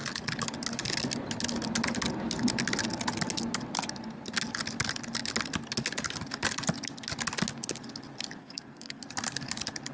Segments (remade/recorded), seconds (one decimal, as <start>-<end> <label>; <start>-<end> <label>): 0.0-8.4 recorded; 8.4-9.0 remade; 9.0-9.9 recorded

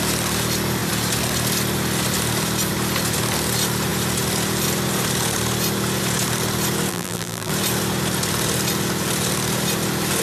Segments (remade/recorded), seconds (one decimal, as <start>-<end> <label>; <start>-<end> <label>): 0.0-6.9 recorded; 6.9-7.5 remade; 7.5-10.2 recorded

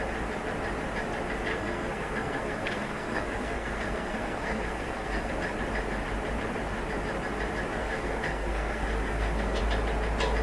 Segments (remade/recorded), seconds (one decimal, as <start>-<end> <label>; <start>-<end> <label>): 0.0-1.5 recorded; 1.5-5.3 remade; 5.3-7.8 recorded; 7.8-9.6 remade; 9.6-10.4 recorded

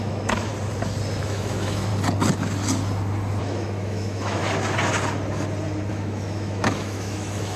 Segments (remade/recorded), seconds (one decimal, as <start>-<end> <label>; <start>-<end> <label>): 0.0-0.5 remade; 0.5-1.2 recorded; 1.2-1.9 remade; 1.9-3.4 recorded; 3.4-4.4 remade; 4.4-5.9 recorded; 5.9-7.6 remade

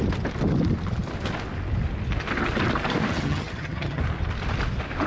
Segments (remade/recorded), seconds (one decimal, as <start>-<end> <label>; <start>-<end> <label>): 0.0-3.1 recorded; 3.1-4.0 remade; 4.0-5.1 recorded

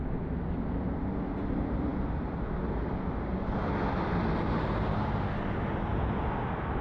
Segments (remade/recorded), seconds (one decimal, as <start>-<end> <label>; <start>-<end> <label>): 0.0-6.8 recorded

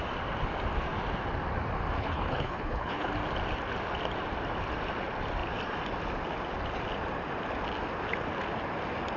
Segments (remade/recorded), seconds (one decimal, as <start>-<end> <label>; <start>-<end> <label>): 0.0-2.0 recorded; 2.0-3.1 remade; 3.1-9.2 recorded